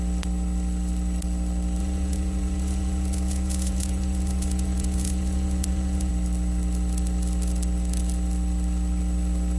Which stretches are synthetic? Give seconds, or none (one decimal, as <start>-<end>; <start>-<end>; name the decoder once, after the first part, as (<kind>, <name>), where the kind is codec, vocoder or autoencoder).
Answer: 1.8-6.1 (vocoder, Vocos)

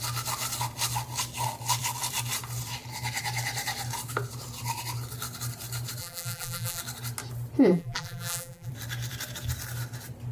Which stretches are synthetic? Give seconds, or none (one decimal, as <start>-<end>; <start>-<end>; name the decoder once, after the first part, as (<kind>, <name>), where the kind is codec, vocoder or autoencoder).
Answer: 6.0-6.8 (vocoder, BigVGAN v2); 7.7-8.7

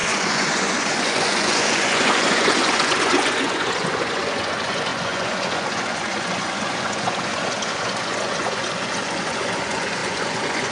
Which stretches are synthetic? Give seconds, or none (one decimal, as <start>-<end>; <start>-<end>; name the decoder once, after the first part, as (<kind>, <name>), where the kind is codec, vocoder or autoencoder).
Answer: 0.0-10.7 (vocoder, Vocos)

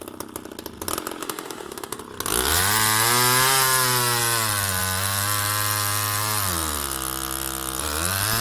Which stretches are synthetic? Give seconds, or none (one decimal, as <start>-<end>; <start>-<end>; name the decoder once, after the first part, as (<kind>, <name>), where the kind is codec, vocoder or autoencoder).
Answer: 1.2-2.0 (autoencoder, DAC-VAE)

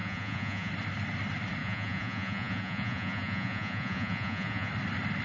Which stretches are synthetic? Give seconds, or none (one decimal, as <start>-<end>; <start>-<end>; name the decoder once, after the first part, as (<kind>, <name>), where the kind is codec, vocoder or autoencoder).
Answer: 0.0-0.7 (vocoder, Vocos); 1.6-4.7

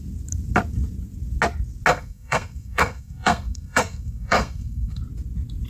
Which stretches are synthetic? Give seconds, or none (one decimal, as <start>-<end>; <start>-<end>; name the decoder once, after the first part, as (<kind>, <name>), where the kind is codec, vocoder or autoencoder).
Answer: 1.9-5.0 (codec, SNAC)

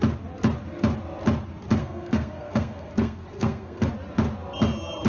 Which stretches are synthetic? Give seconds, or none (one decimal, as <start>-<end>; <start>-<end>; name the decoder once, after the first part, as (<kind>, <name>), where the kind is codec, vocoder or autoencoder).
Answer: 1.8-3.9 (codec, SNAC)

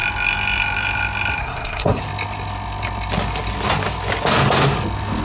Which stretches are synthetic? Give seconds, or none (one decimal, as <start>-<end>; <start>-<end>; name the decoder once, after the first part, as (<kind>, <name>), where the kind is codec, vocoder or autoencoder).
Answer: 1.4-2.0 (codec, SNAC)